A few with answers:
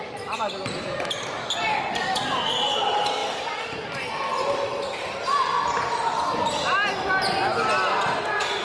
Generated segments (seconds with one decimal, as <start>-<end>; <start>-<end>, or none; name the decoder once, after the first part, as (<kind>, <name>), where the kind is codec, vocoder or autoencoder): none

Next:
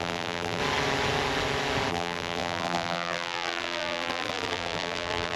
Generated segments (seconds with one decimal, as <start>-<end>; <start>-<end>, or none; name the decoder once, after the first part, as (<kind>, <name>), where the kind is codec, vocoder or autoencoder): 0.0-0.6 (vocoder, BigVGAN v2); 1.9-5.4

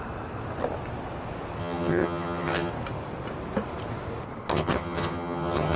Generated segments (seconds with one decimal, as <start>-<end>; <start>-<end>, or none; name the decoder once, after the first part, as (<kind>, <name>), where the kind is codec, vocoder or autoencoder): 1.6-2.7 (vocoder, HiFi-GAN); 4.5-5.8

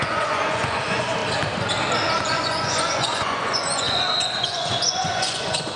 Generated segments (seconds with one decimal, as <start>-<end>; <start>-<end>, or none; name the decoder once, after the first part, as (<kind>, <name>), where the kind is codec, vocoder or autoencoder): 0.0-1.2 (vocoder, Vocos); 2.2-5.8

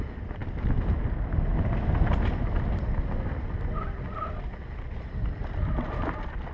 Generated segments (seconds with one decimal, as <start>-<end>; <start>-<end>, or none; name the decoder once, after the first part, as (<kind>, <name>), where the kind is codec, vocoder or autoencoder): none

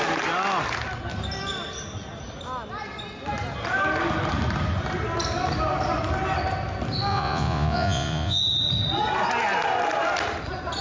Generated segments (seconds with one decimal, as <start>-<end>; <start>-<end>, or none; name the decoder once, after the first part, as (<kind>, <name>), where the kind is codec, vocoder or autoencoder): 7.1-8.4 (vocoder, Vocos)